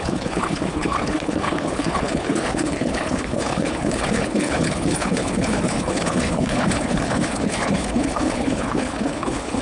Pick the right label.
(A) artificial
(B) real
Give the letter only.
A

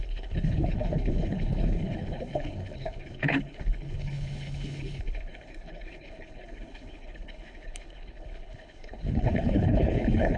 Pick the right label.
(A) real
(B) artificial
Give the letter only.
B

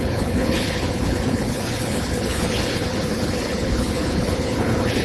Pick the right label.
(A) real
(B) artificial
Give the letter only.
B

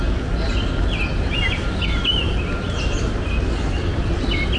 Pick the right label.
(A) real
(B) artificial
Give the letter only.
A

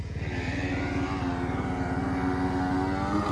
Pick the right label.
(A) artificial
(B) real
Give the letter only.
B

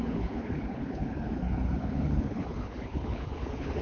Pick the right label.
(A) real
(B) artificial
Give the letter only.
B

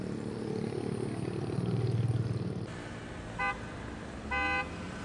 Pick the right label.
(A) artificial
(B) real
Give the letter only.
B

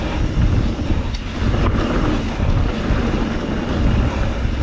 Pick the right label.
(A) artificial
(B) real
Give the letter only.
B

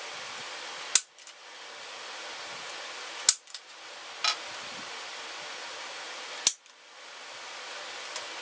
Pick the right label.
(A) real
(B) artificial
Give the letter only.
A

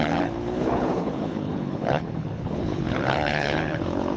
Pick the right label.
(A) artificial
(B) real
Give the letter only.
A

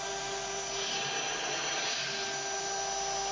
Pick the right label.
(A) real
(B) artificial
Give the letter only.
A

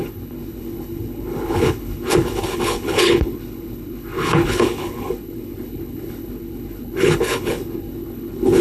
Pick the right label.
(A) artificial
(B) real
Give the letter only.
A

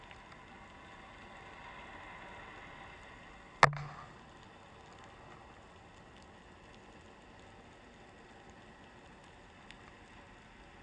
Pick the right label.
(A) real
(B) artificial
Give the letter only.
A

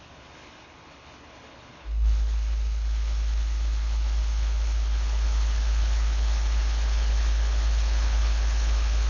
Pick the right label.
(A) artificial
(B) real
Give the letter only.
A